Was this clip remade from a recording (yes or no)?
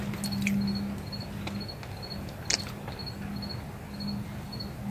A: no